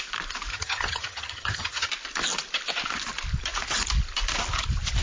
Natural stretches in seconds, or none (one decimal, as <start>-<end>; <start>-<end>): 0.0-0.5; 1.9-5.0